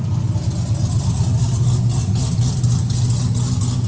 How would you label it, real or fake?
real